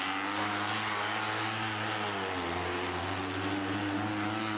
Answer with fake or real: real